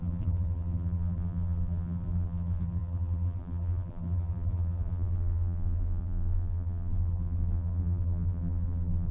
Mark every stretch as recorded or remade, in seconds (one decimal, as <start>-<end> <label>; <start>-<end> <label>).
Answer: 0.0-9.1 remade